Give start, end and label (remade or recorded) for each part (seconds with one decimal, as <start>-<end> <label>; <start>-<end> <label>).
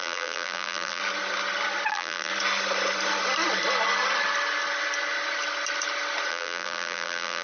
0.0-1.0 remade; 1.0-1.9 recorded; 1.9-2.3 remade; 2.3-6.3 recorded; 6.3-7.4 remade